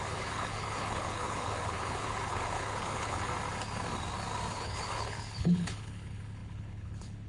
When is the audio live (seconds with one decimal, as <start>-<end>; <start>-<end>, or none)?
3.3-4.5